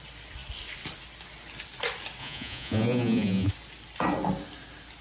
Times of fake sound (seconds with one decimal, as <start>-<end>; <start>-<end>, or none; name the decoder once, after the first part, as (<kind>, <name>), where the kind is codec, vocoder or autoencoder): 2.2-3.5 (vocoder, Vocos)